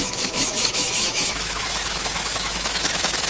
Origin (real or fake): fake